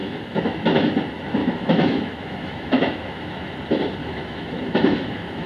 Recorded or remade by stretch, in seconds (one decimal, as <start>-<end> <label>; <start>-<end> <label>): 0.0-0.9 remade; 0.9-1.4 recorded; 1.4-3.5 remade; 3.5-4.0 recorded; 4.0-5.5 remade